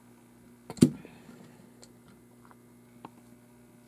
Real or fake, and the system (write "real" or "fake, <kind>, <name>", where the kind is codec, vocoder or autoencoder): real